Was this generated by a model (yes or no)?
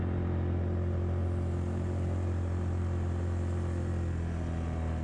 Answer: no